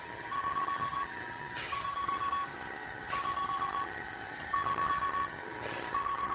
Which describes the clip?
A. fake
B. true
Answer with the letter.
A